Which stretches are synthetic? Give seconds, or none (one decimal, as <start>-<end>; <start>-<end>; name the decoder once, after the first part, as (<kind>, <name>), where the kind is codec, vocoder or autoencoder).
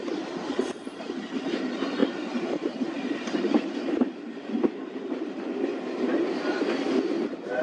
0.4-1.2 (vocoder, BigVGAN v2); 2.0-6.6